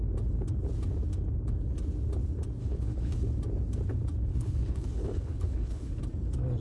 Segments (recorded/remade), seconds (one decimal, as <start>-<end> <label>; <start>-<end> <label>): 0.0-2.6 recorded; 2.6-3.3 remade; 3.3-4.3 recorded; 4.3-6.0 remade; 6.0-6.6 recorded